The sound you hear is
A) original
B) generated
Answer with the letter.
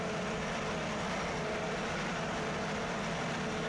A